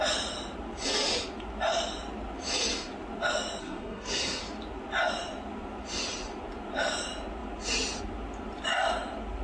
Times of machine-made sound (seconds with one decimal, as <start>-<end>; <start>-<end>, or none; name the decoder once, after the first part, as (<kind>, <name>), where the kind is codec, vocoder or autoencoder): 3.6-4.4 (codec, SNAC)